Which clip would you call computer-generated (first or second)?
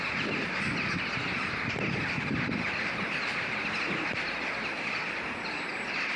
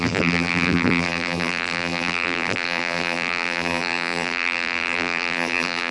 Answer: second